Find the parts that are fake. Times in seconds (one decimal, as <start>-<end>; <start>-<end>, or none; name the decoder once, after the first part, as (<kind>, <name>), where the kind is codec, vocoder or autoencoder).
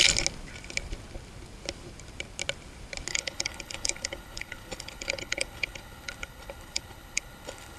3.1-7.8 (codec, HILCodec)